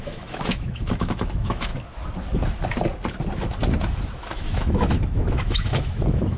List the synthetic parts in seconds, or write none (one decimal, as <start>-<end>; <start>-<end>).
0.0-1.7; 4.1-6.4